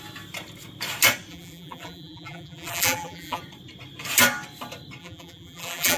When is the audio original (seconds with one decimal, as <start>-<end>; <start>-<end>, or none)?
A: 0.0-1.3; 3.4-5.0